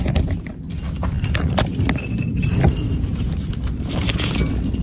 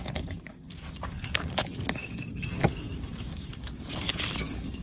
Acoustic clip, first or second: first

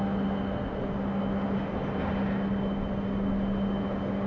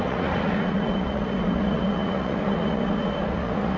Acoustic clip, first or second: first